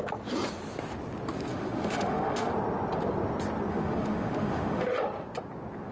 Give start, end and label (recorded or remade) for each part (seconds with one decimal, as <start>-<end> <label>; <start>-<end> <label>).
0.0-1.5 recorded; 1.5-2.5 remade; 2.5-3.7 recorded; 3.7-5.0 remade; 5.0-5.9 recorded